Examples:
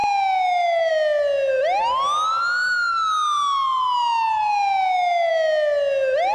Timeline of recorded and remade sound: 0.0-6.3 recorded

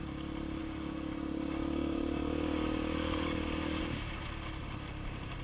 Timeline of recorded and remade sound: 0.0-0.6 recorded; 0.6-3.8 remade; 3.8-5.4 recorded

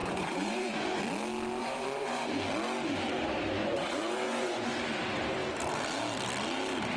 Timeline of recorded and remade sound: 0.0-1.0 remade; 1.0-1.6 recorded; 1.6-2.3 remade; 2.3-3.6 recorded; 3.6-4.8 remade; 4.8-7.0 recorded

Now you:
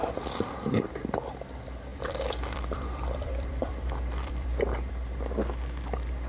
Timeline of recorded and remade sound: 0.0-1.9 recorded; 1.9-4.9 remade; 4.9-6.3 recorded

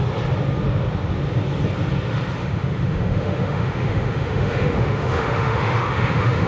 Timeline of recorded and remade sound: 0.0-2.4 recorded; 2.4-6.5 remade